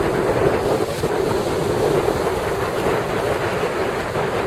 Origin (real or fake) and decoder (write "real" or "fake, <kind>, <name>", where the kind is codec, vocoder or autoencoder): real